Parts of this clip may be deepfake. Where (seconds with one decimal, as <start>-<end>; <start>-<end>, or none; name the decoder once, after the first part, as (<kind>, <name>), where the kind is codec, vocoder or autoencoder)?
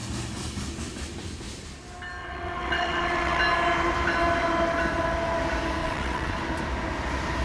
2.2-3.4 (vocoder, WaveNeXt); 5.8-6.4